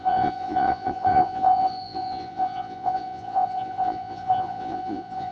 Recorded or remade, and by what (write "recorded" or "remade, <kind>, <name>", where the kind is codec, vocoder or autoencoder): remade, vocoder, Vocos